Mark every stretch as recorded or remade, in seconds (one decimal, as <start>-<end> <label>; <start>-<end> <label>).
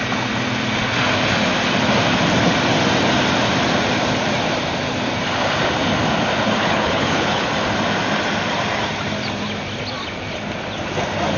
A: 0.0-6.6 recorded; 6.6-7.5 remade; 7.5-11.4 recorded